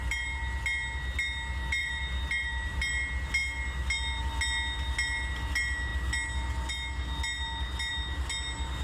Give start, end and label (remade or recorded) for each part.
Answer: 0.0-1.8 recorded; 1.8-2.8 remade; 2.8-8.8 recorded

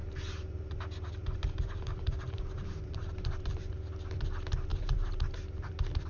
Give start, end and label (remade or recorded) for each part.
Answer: 0.0-3.7 remade; 3.7-4.7 recorded; 4.7-6.1 remade

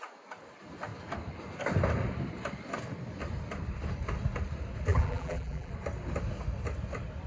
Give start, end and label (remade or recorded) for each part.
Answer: 0.0-4.9 recorded; 4.9-5.7 remade; 5.7-7.3 recorded

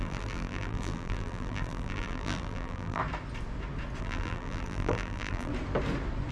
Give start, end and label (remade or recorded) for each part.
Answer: 0.0-3.0 remade; 3.0-4.0 recorded; 4.0-5.5 remade; 5.5-6.3 recorded

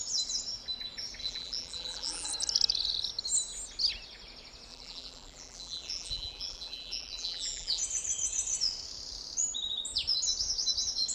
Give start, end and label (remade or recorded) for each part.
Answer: 0.0-1.2 recorded; 1.2-2.3 remade; 2.3-4.7 recorded; 4.7-7.8 remade; 7.8-11.1 recorded